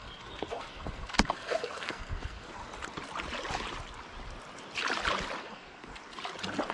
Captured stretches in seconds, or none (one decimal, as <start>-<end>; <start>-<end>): 2.6-5.4; 5.9-6.7